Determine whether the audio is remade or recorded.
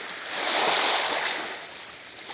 recorded